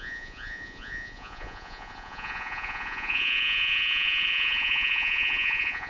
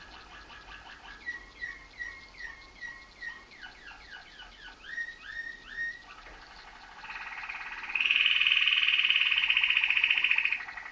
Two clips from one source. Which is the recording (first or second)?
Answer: second